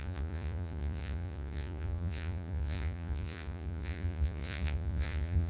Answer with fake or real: fake